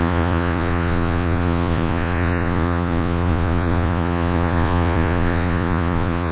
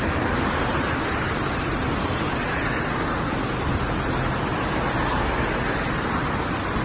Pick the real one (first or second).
second